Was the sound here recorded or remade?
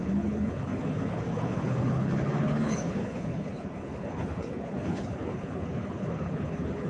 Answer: remade